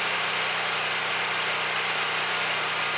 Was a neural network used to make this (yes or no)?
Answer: no